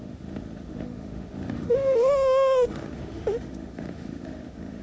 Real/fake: fake